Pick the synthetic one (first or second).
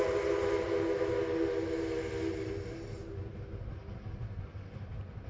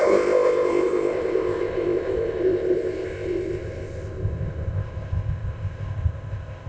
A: second